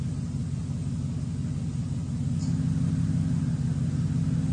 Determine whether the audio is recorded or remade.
recorded